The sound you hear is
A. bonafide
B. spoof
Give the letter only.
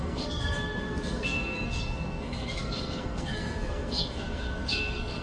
B